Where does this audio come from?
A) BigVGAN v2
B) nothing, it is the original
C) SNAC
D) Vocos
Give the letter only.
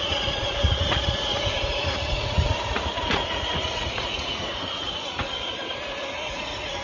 D